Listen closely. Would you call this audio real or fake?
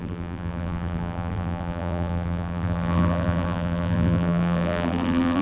fake